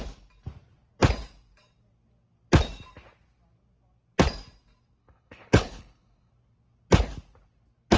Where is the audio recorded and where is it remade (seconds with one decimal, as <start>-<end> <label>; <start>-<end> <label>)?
0.0-5.0 recorded; 5.0-6.3 remade; 6.3-8.0 recorded